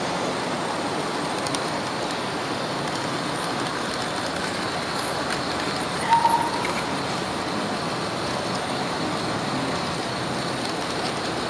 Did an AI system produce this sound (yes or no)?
no